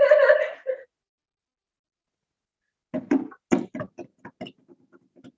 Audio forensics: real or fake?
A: real